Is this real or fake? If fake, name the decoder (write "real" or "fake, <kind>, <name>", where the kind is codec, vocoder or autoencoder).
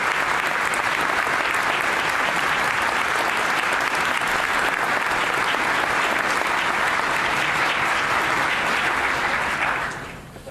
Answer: real